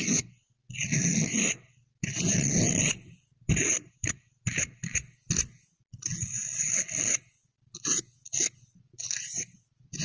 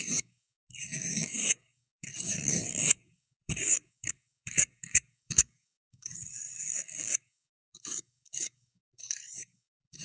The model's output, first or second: second